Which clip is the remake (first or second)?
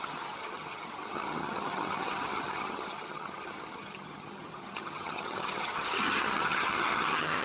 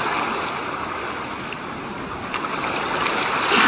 first